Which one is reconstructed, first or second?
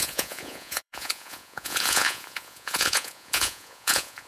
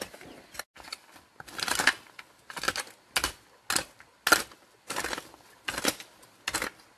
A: first